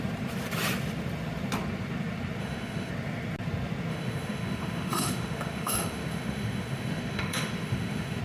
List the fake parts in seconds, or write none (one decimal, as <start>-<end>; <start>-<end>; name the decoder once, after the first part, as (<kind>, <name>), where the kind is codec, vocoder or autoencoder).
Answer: 2.4-2.9 (autoencoder, DAC-VAE); 3.9-8.2